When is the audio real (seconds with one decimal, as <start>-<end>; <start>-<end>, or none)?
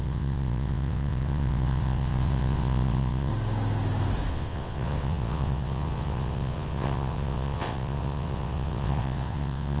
3.3-4.3